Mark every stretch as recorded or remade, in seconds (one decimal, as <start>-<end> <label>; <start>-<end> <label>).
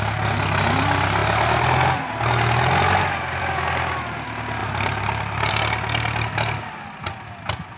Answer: 0.0-4.6 recorded; 4.6-5.5 remade; 5.5-7.8 recorded